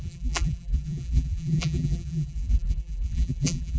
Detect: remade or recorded remade